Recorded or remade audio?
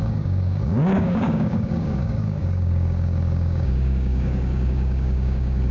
remade